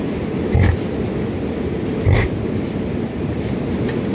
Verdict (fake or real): real